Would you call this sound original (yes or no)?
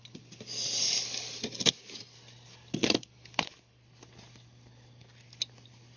yes